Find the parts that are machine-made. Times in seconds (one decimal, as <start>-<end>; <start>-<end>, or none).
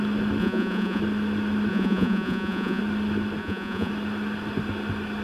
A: 0.4-1.0; 1.7-2.8; 3.4-3.9